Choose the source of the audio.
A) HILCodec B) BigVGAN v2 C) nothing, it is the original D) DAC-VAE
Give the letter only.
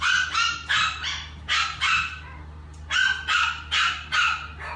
C